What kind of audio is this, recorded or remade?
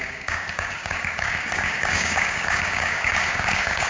remade